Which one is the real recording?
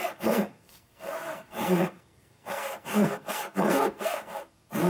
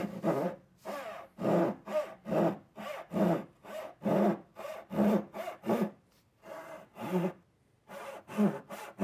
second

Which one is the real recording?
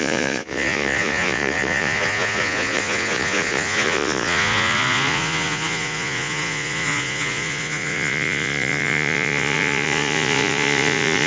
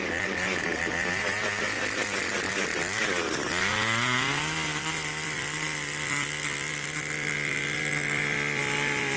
second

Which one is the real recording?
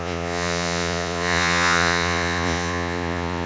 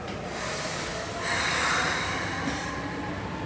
second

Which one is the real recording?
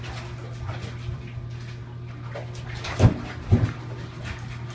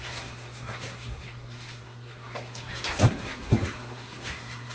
first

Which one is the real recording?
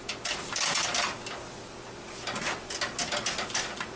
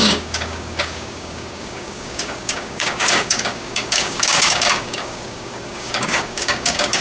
first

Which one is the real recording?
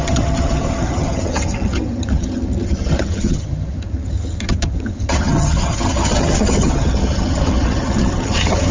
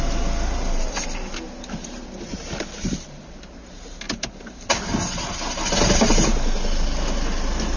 second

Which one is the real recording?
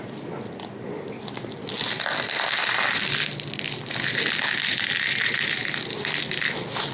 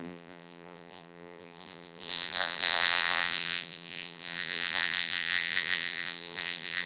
first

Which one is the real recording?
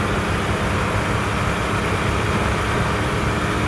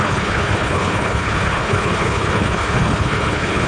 first